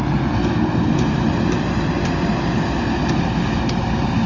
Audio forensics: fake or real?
real